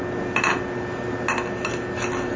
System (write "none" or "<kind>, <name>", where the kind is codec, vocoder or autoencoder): none